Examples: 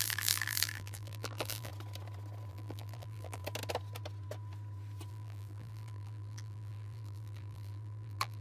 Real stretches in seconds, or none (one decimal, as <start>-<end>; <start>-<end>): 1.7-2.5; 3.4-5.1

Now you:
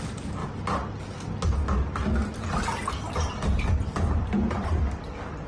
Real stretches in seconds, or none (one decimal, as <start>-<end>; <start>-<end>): 0.0-3.8; 4.7-5.5

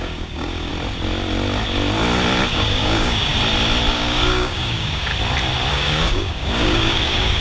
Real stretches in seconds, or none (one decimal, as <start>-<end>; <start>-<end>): 0.7-2.5; 3.3-3.9; 5.1-5.7

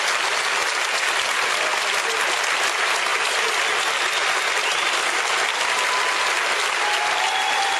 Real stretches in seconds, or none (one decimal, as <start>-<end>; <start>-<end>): 0.0-7.8